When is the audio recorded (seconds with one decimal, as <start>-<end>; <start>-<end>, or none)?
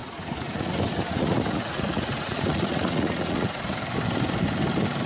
0.7-1.1; 3.7-5.1